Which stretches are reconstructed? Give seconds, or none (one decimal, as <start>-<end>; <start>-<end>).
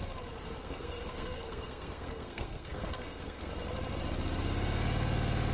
0.6-3.5